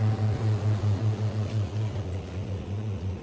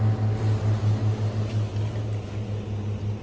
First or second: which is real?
second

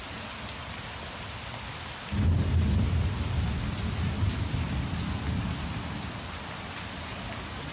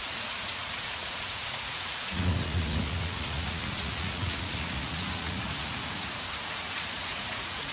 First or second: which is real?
first